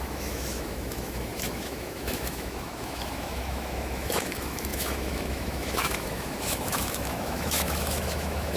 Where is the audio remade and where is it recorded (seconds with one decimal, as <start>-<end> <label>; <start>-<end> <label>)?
0.0-8.6 remade